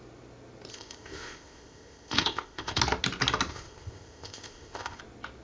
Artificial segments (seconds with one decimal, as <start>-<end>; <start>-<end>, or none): 0.7-2.8; 3.5-5.0